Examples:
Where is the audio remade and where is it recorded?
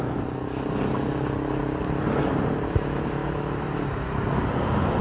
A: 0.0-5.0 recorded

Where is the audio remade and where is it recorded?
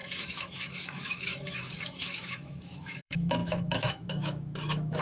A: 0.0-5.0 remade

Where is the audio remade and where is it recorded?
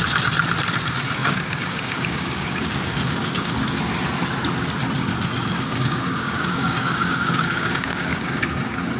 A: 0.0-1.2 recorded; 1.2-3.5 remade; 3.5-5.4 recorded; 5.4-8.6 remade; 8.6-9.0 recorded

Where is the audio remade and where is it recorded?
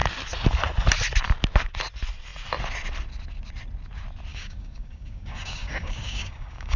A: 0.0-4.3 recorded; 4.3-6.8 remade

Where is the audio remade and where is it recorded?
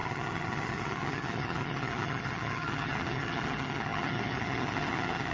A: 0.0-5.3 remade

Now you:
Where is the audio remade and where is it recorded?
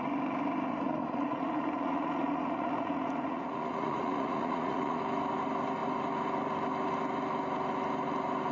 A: 0.0-0.7 recorded; 0.7-5.0 remade; 5.0-8.5 recorded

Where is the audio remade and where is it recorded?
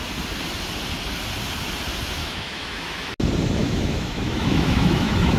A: 0.0-2.2 recorded; 2.2-3.1 remade; 3.1-3.6 recorded; 3.6-5.4 remade